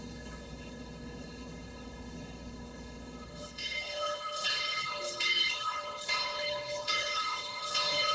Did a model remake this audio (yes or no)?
yes